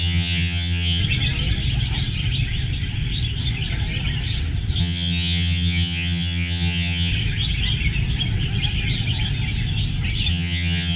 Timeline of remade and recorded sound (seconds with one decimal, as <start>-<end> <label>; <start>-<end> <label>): 0.0-1.0 remade; 1.0-4.8 recorded; 4.8-7.1 remade; 7.1-10.3 recorded; 10.3-11.0 remade